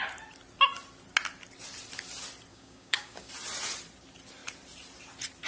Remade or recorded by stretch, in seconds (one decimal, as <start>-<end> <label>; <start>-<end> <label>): 0.0-2.5 recorded; 2.5-3.3 remade; 3.3-5.5 recorded